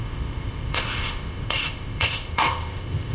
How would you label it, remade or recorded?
remade